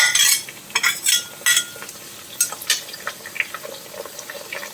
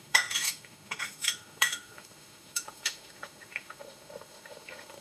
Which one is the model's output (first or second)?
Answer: second